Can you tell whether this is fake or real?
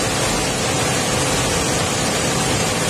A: real